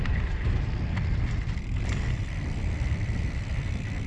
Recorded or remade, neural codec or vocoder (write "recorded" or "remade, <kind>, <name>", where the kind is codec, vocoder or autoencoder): recorded